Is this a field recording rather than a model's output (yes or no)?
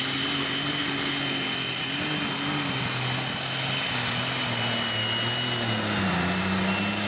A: yes